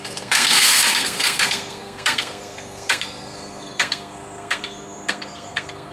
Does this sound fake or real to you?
fake